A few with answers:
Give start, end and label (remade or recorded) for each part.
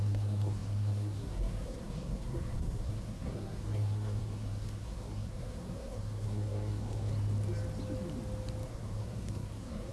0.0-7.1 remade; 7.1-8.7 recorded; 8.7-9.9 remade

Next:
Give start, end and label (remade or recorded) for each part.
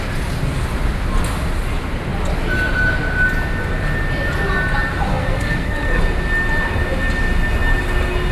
0.0-5.1 recorded; 5.1-6.0 remade; 6.0-8.3 recorded